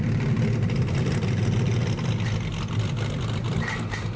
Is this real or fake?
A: real